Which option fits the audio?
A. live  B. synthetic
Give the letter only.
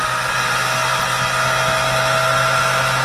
A